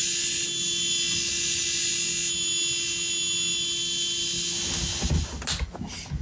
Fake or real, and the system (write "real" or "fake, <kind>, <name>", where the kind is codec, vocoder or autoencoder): real